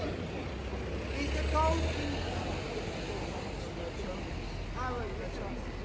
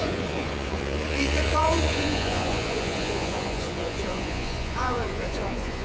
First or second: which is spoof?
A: second